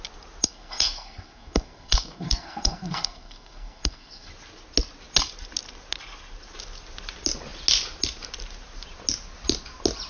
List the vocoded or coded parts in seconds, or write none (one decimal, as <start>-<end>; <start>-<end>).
0.4-4.3